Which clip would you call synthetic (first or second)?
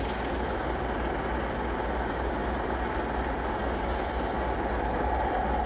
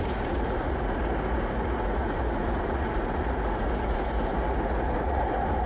second